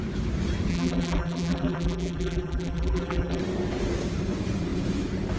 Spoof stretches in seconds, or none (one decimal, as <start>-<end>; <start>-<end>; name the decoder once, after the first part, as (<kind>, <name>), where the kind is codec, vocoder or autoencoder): 0.7-3.4 (vocoder, BigVGAN v2)